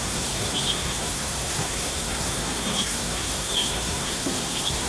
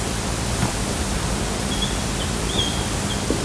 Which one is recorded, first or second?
second